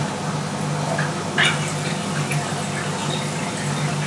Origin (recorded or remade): recorded